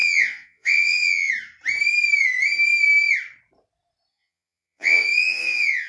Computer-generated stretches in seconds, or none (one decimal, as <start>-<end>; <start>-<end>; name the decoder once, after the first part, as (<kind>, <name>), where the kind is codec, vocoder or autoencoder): 0.0-1.3 (vocoder, Vocos); 4.1-5.9